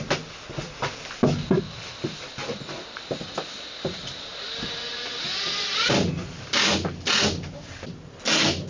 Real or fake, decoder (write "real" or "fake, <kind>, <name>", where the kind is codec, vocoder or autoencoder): real